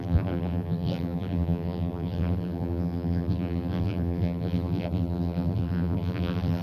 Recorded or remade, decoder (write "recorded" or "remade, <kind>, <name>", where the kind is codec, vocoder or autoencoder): remade, vocoder, BigVGAN v2